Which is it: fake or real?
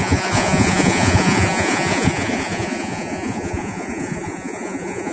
fake